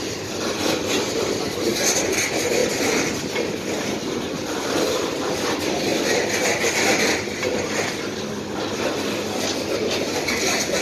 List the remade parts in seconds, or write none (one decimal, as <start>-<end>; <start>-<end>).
0.0-2.6; 4.2-10.8